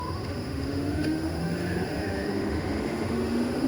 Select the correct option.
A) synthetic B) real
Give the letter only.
A